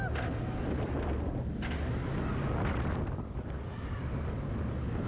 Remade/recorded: recorded